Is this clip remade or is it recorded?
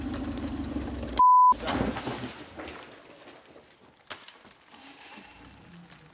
recorded